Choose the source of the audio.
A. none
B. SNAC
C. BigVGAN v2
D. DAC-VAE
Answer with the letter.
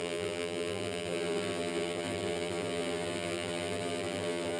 C